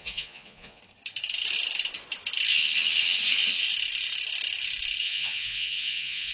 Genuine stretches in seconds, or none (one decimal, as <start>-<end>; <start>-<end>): 0.8-5.0